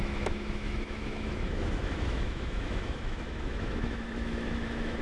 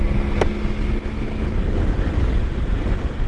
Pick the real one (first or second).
second